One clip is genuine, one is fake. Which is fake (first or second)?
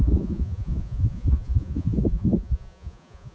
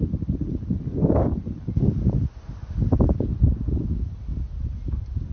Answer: first